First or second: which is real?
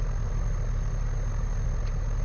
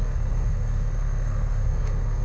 first